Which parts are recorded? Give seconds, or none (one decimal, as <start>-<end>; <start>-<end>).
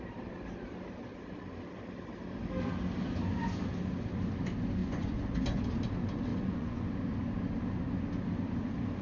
0.0-4.8; 5.6-6.3; 7.0-9.0